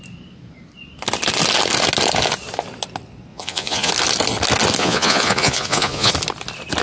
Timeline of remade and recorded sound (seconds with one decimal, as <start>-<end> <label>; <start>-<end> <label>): 0.0-3.3 recorded; 3.3-3.9 remade; 3.9-4.8 recorded; 4.8-6.1 remade; 6.1-6.8 recorded